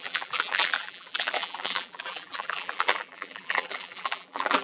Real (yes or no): no